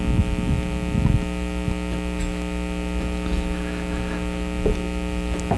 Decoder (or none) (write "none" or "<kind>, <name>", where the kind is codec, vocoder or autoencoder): none